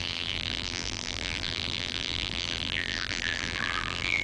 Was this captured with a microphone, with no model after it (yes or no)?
no